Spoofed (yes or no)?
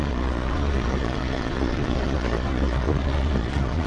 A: yes